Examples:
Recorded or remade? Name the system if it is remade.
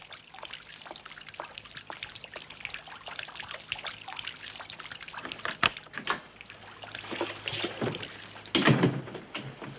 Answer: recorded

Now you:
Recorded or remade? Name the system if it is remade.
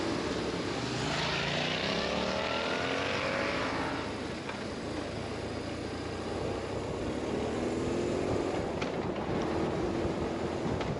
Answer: recorded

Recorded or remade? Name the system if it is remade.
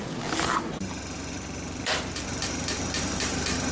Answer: recorded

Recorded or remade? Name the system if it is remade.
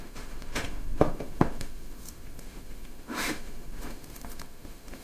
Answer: remade, autoencoder, DAC-VAE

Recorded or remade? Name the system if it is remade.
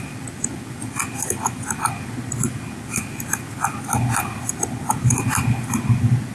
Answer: recorded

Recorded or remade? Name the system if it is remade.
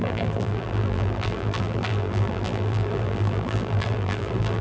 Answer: remade, vocoder, BigVGAN v2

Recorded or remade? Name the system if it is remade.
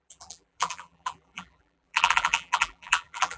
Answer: remade, vocoder, BigVGAN v2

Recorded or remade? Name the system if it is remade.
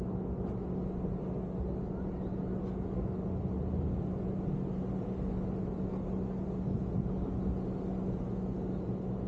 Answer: recorded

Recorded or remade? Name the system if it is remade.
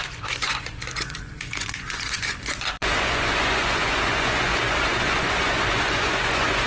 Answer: remade, vocoder, Vocos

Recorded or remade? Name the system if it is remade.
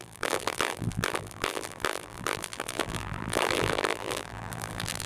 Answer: remade, vocoder, BigVGAN v2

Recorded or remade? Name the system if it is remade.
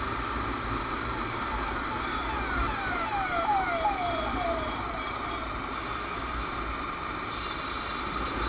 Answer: remade, vocoder, BigVGAN v2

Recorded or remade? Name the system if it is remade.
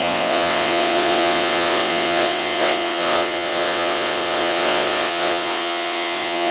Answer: remade, vocoder, WaveNeXt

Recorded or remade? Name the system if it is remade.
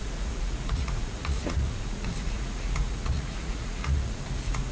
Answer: remade, vocoder, Vocos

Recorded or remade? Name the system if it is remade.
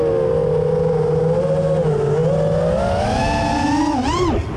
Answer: recorded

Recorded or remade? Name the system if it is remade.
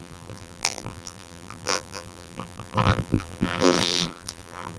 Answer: remade, vocoder, BigVGAN v2